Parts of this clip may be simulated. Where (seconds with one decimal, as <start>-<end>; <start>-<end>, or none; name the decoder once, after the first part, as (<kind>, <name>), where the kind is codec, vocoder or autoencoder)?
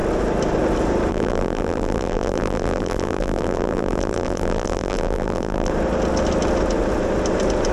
1.1-5.7 (vocoder, BigVGAN v2)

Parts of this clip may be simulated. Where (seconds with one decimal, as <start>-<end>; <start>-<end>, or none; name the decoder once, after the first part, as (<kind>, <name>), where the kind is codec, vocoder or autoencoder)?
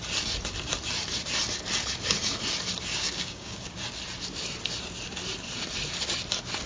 2.9-3.8 (codec, DAC)